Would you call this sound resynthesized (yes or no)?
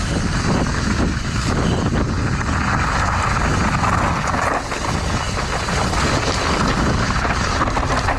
no